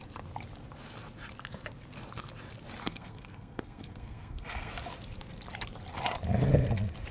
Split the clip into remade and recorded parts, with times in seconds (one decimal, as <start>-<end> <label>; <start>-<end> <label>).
0.0-2.8 recorded; 2.8-4.7 remade; 4.7-7.1 recorded